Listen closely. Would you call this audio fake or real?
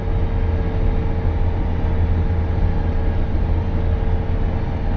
real